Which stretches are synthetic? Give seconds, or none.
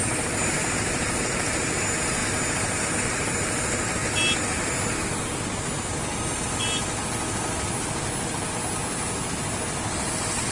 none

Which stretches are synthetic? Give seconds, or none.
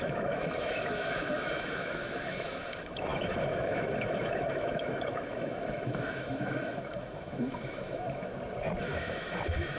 0.0-8.3 (autoencoder, DAC-VAE); 8.8-9.8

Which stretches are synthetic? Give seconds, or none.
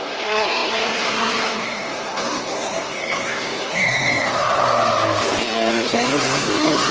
0.0-4.6 (codec, SNAC); 5.7-6.9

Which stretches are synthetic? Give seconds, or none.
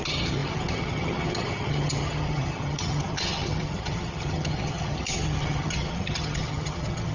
0.0-7.1 (vocoder, HiFi-GAN)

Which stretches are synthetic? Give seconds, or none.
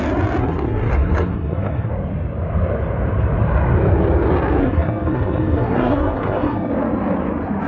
0.4-1.9 (codec, SNAC); 4.6-6.7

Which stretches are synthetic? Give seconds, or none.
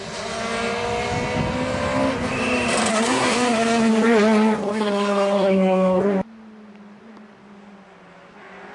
2.9-3.9 (codec, SNAC); 4.7-6.0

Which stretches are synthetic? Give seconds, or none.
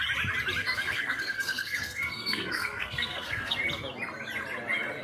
0.6-3.6 (codec, SNAC)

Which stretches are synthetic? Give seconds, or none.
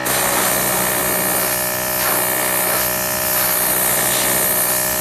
none